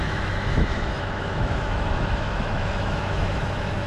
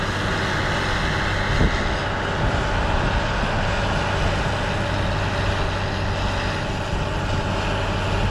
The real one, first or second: second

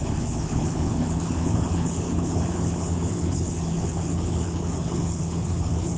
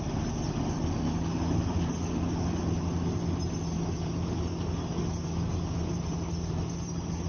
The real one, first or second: second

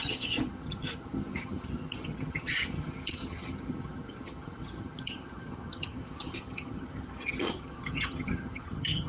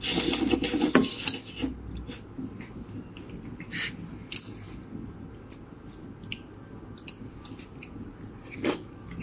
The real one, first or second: second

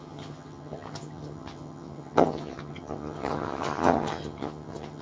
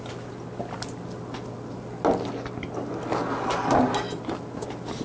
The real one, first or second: second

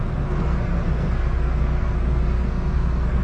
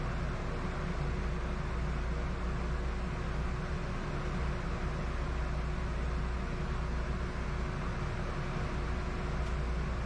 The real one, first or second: second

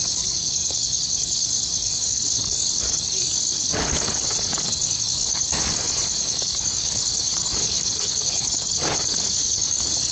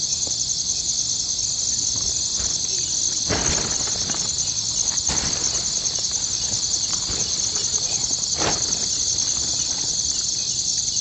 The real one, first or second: second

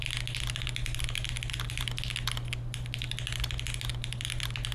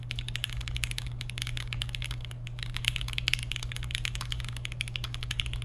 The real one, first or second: first